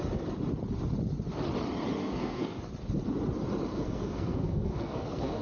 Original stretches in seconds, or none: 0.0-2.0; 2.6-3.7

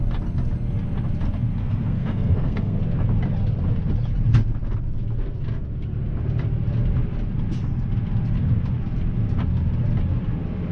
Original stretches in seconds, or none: 0.0-1.6; 2.8-10.7